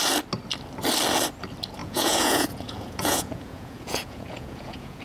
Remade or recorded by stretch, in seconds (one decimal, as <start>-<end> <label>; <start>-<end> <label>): 0.0-1.8 recorded; 1.8-5.0 remade